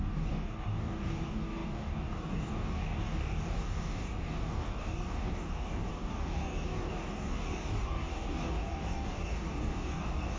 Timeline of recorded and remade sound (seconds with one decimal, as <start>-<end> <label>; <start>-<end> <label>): 0.0-10.4 remade